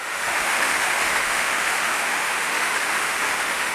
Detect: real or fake fake